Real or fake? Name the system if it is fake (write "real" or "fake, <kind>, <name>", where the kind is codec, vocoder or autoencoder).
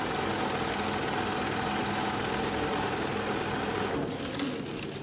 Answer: real